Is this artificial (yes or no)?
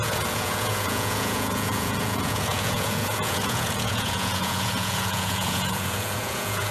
yes